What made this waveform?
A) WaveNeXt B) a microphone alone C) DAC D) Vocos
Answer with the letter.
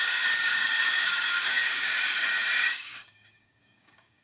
C